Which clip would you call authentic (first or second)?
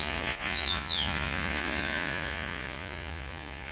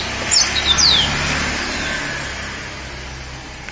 second